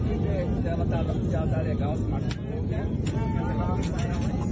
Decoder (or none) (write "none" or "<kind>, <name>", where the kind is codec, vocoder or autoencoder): none